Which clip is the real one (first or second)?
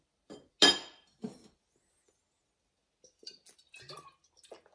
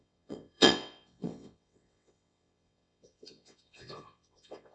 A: first